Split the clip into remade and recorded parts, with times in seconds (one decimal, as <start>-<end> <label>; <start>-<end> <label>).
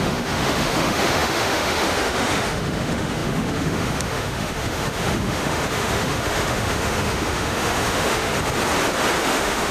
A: 0.0-8.3 remade; 8.3-9.2 recorded; 9.2-9.7 remade